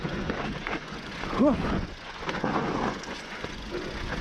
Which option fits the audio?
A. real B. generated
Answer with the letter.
B